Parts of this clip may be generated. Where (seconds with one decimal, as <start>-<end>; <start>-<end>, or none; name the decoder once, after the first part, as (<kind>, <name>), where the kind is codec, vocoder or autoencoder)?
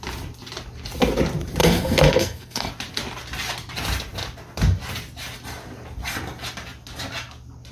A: 1.6-2.7 (codec, SNAC)